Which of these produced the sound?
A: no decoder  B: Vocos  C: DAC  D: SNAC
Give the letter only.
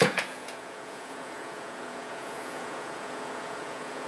B